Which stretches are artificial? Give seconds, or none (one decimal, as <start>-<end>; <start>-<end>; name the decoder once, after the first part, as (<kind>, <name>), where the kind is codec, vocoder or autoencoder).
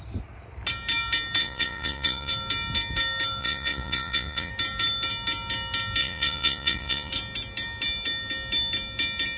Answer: 1.4-2.3 (vocoder, Vocos); 3.4-4.5; 6.0-7.1